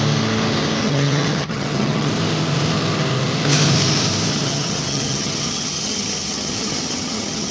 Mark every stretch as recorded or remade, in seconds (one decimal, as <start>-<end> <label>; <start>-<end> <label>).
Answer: 0.0-0.8 recorded; 0.8-2.1 remade; 2.1-4.3 recorded; 4.3-7.5 remade